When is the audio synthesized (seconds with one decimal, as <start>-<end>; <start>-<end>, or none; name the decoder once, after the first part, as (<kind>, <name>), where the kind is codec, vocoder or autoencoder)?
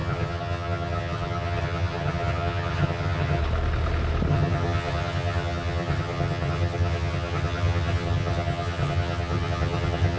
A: 0.0-3.4 (vocoder, HiFi-GAN); 4.3-10.2